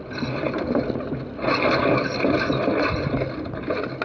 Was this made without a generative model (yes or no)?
yes